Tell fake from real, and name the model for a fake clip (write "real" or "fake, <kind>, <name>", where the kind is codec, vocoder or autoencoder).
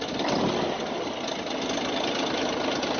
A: real